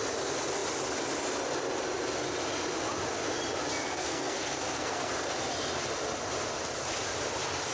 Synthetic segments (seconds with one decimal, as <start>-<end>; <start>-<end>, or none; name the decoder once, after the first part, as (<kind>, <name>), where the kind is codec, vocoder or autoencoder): 3.8-5.1 (codec, SNAC)